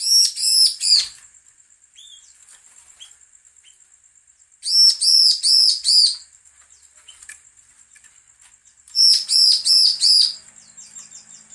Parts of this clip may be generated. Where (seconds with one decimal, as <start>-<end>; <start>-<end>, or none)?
0.4-3.1; 5.1-7.7; 8.6-10.5